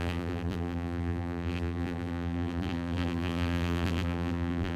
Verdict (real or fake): fake